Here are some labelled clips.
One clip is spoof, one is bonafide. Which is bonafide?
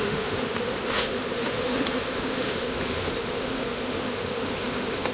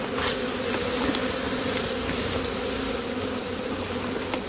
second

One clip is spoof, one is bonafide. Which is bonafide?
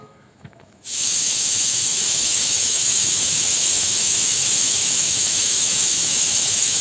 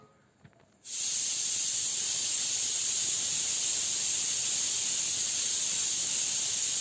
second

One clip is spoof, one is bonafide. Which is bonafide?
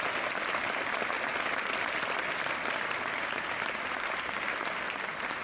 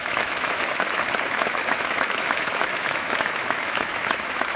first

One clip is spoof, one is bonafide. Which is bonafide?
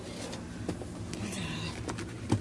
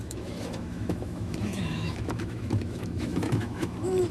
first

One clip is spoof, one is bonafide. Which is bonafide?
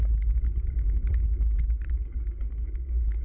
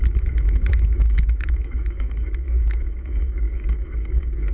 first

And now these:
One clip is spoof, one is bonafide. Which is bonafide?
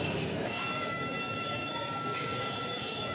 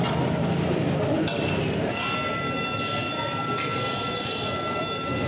second